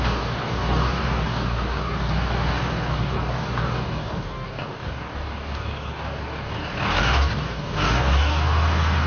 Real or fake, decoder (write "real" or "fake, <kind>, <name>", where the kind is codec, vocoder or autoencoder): fake, codec, DAC